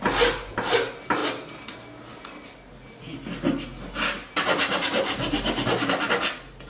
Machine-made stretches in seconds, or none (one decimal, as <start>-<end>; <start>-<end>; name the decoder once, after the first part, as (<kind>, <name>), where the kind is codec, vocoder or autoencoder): none